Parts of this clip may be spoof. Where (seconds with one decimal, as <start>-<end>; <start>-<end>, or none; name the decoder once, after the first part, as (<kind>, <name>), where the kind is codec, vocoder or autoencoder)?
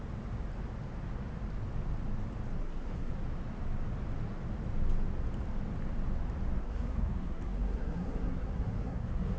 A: 2.6-3.1 (codec, SNAC); 6.6-9.4